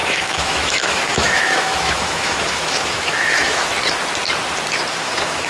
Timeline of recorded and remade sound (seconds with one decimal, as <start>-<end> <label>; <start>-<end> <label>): 0.0-3.7 remade; 3.7-4.9 recorded; 4.9-5.5 remade